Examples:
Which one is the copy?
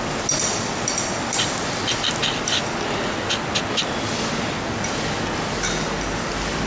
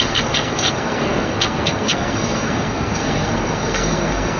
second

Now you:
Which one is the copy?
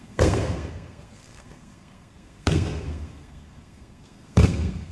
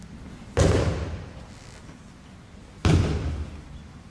first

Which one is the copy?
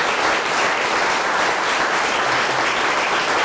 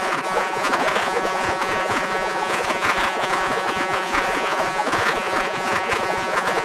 second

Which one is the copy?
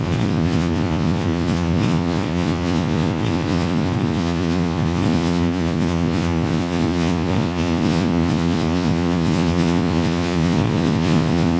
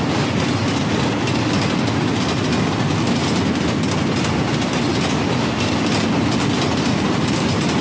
first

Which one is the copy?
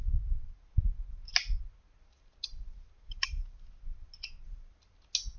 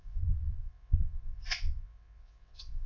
second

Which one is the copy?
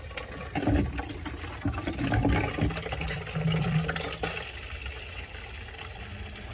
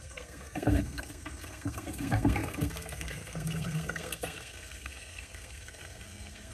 second